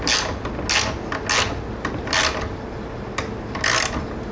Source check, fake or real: real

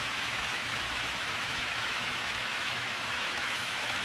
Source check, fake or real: fake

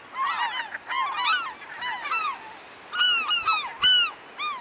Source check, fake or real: real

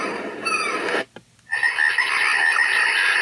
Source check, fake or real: real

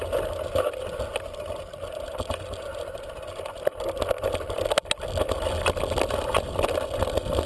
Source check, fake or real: real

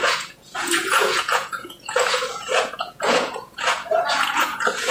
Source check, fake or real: fake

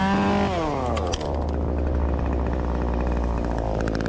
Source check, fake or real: real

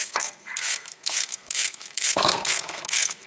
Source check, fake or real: fake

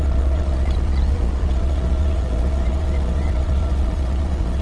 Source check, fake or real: fake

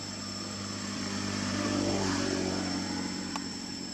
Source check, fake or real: fake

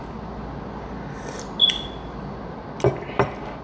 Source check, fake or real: real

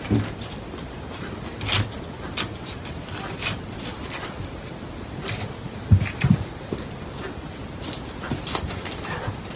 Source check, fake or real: real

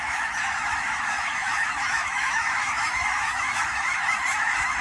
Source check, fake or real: fake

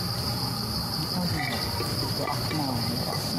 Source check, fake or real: real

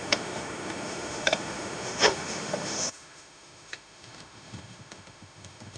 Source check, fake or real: fake